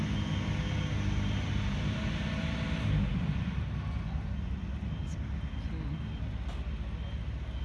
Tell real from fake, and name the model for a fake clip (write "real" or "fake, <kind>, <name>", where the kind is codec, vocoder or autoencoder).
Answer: real